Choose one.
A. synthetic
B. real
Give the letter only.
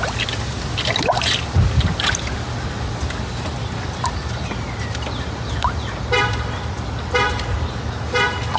B